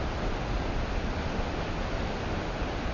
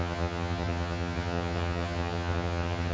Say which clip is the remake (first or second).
second